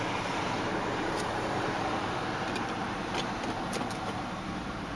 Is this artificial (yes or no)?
yes